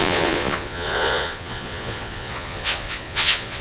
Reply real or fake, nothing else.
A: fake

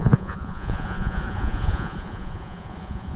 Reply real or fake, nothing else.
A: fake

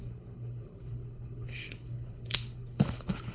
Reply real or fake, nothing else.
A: fake